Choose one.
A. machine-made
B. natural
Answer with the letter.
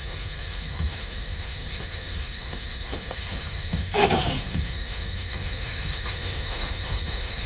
A